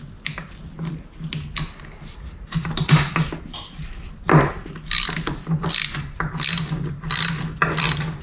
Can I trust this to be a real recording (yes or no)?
yes